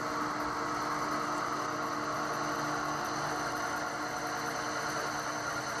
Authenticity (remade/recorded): recorded